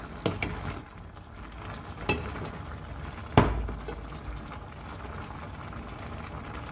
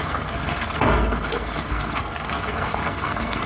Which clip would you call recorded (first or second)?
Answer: first